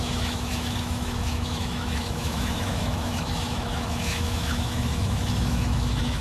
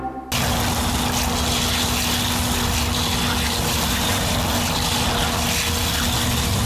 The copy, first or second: first